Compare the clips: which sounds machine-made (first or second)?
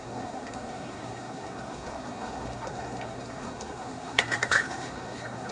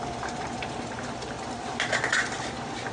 first